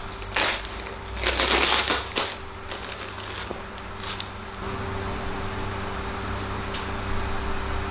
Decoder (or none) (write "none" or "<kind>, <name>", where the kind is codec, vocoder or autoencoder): none